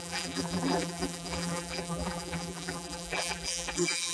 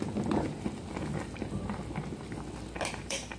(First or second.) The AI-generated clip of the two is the first